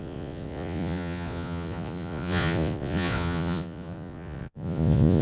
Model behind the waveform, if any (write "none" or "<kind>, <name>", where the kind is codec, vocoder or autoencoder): vocoder, Vocos